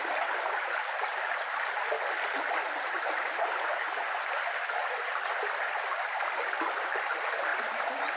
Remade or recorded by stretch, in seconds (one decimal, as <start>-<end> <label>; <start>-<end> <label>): 0.0-8.2 recorded